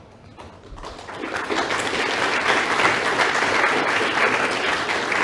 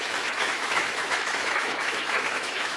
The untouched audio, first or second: first